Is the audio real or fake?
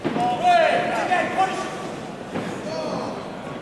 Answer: real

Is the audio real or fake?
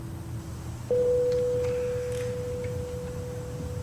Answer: real